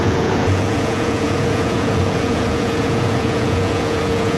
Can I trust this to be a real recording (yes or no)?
no